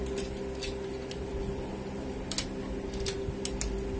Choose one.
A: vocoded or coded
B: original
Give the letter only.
B